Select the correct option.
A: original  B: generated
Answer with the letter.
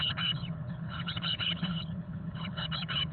B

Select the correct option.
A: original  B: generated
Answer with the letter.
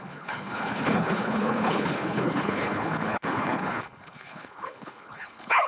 B